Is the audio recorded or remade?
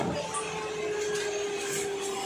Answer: recorded